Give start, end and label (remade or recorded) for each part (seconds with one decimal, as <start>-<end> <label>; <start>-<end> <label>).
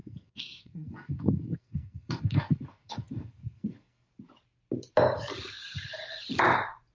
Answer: 0.0-4.1 remade; 4.1-6.9 recorded